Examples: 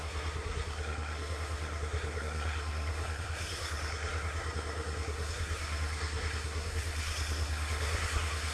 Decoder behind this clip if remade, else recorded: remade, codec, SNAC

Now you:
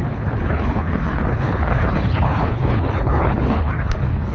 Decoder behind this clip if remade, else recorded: remade, codec, HILCodec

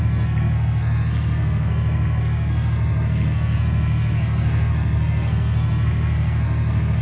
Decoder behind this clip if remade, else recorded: remade, codec, SNAC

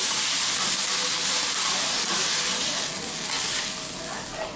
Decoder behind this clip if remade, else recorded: recorded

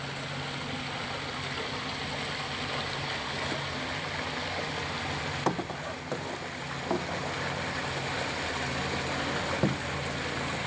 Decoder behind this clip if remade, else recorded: recorded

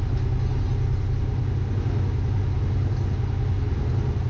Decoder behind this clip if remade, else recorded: recorded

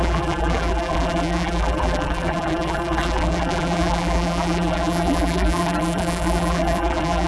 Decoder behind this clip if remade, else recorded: remade, vocoder, BigVGAN v2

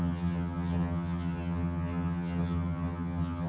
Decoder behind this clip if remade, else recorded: remade, vocoder, HiFi-GAN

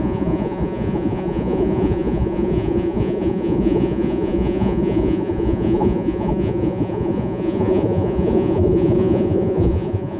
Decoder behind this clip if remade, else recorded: remade, vocoder, Vocos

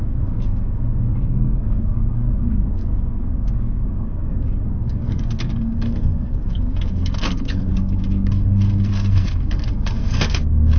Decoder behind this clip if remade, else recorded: remade, codec, SNAC